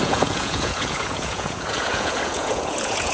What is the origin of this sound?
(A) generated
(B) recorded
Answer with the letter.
A